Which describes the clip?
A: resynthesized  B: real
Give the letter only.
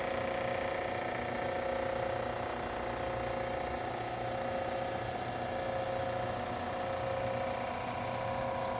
B